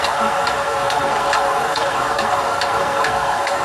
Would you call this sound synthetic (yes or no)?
yes